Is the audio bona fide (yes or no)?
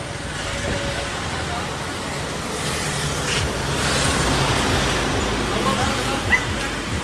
yes